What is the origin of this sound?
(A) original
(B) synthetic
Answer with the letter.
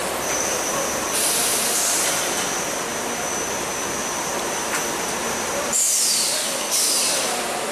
B